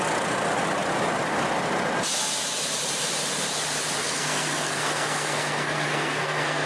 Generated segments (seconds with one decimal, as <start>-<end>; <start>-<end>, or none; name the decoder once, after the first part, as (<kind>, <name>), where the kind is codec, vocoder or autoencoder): 4.0-6.7 (codec, SNAC)